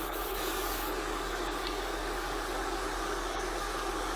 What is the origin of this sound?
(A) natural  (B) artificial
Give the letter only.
B